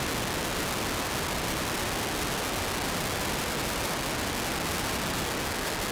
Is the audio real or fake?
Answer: real